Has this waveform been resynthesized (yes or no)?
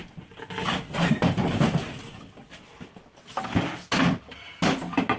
no